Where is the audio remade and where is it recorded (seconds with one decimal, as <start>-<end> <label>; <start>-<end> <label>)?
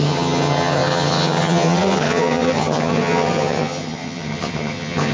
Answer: 0.0-5.1 remade